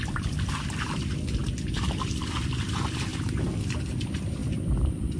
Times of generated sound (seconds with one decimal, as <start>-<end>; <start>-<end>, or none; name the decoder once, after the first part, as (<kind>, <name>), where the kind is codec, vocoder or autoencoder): 0.0-1.4 (vocoder, BigVGAN v2); 2.5-3.1; 3.9-5.2